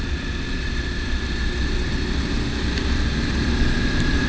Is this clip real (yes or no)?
yes